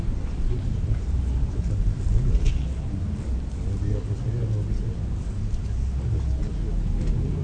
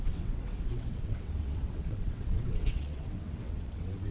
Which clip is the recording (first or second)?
first